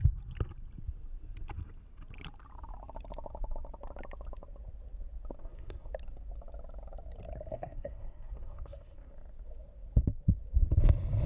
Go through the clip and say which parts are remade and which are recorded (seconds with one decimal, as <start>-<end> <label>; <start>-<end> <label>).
0.0-5.4 recorded; 5.4-5.9 remade; 5.9-7.5 recorded; 7.5-9.1 remade; 9.1-11.3 recorded